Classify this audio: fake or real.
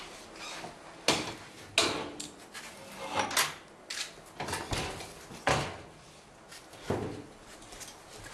real